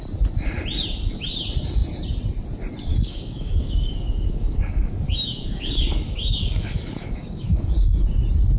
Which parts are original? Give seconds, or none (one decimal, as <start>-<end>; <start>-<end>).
0.0-2.9; 7.7-8.6